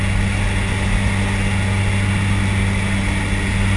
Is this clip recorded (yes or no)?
yes